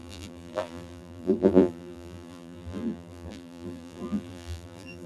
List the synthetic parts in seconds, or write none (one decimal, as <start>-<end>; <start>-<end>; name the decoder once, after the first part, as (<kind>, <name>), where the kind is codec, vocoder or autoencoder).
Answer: 0.0-5.1 (vocoder, BigVGAN v2)